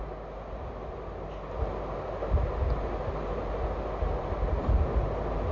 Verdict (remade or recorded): recorded